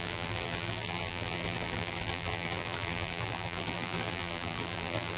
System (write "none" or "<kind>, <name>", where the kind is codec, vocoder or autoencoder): vocoder, BigVGAN v2